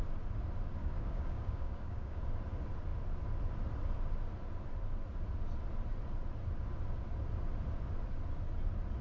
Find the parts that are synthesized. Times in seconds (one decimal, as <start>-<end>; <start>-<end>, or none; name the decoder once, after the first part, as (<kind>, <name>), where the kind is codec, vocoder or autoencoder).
0.8-2.2 (codec, DAC)